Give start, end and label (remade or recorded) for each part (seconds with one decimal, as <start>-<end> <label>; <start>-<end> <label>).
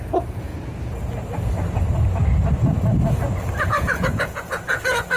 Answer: 0.0-0.5 remade; 0.5-3.6 recorded; 3.6-5.2 remade